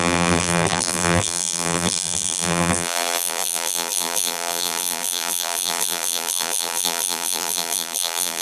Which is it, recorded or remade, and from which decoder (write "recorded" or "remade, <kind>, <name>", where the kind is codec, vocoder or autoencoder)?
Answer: remade, vocoder, BigVGAN v2